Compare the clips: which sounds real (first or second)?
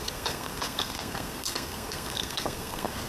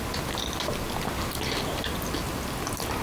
second